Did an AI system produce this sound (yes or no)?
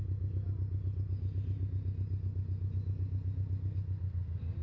no